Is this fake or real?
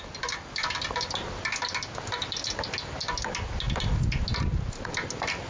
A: real